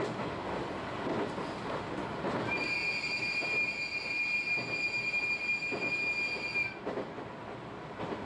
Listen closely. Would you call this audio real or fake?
real